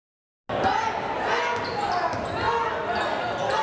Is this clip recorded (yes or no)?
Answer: yes